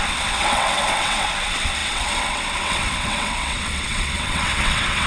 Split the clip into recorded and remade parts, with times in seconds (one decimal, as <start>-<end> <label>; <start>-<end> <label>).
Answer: 0.0-5.1 remade